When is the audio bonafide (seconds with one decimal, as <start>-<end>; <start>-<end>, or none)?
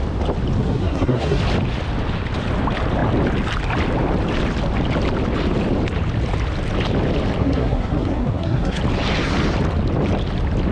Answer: 0.0-0.6; 1.4-7.4; 8.8-10.7